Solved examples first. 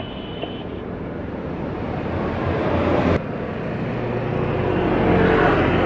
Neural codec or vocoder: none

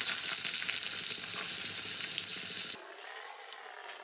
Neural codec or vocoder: none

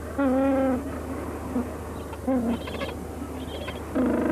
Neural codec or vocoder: none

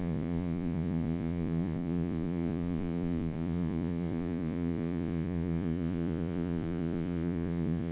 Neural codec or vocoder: vocoder, Vocos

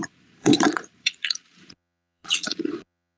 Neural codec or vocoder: vocoder, Vocos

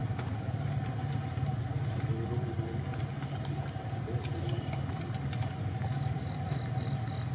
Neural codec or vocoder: none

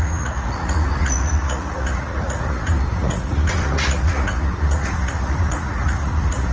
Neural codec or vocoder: vocoder, Vocos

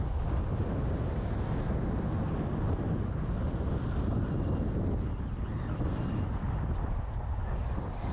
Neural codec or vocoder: none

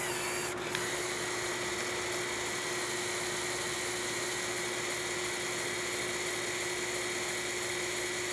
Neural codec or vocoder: none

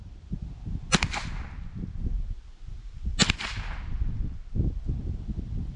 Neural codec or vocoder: none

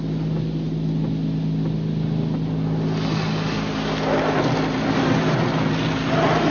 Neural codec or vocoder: none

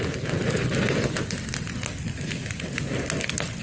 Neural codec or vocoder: none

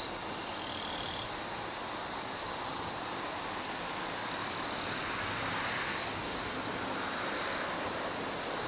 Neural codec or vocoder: none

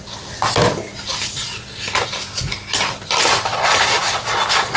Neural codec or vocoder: none